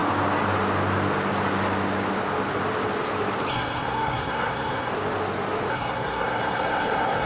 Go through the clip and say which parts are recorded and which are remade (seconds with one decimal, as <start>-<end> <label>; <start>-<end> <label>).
0.0-3.5 recorded; 3.5-4.9 remade; 4.9-5.7 recorded; 5.7-7.3 remade